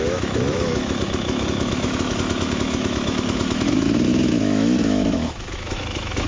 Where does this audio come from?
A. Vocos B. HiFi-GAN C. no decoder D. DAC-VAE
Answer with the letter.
D